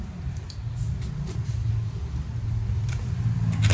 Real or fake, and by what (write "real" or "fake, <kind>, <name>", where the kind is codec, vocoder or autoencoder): real